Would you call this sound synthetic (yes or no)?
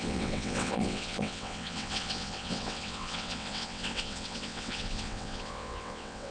yes